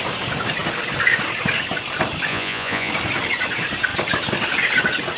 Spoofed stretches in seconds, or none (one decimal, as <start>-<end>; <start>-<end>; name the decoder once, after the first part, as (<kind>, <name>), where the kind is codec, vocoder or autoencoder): 2.3-2.9 (vocoder, Vocos)